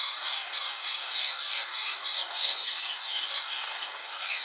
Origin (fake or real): fake